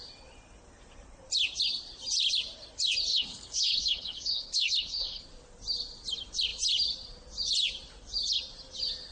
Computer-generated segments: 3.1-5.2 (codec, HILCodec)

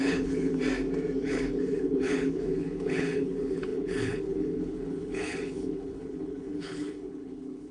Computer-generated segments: 0.0-0.6 (codec, HILCodec); 1.2-7.7